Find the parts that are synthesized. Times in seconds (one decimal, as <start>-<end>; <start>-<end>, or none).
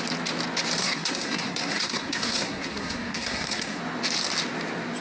0.8-3.8